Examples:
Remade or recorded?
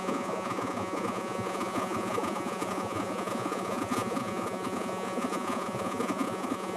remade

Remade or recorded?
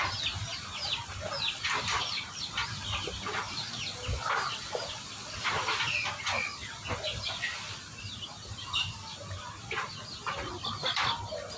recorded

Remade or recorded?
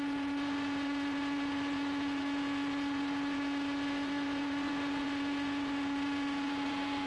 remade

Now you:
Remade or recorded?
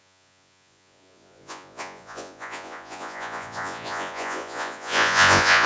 remade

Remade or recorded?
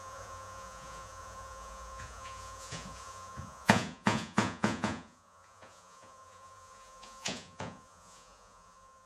remade